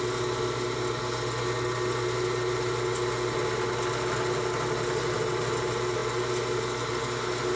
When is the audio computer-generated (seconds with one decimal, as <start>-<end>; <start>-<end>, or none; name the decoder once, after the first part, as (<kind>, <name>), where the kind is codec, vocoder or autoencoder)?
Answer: none